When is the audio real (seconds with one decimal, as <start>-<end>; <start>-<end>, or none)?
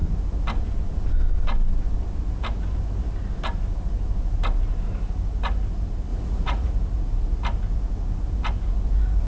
0.0-6.1; 6.7-9.3